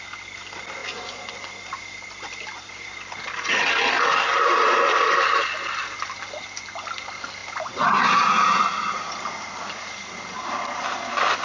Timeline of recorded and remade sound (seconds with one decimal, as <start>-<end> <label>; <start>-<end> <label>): 0.0-11.4 recorded